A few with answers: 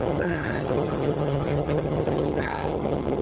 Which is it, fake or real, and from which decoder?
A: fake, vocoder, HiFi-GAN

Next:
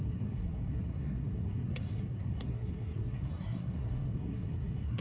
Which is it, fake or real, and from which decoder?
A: fake, codec, SNAC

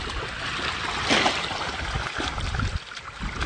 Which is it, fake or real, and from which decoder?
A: real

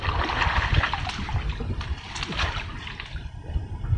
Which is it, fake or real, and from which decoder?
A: real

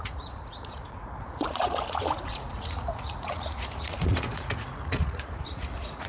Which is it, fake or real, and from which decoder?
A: fake, vocoder, Vocos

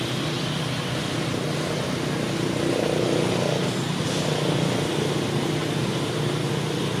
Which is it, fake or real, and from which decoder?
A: real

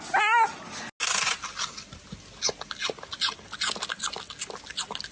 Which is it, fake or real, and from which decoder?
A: real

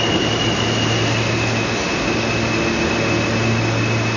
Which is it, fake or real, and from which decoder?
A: real